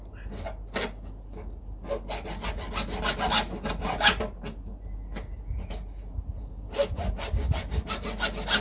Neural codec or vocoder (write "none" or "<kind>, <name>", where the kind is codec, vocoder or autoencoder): none